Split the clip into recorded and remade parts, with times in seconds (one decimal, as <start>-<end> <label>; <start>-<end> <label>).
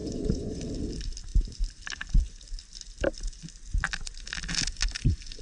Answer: 0.0-0.6 remade; 0.6-5.4 recorded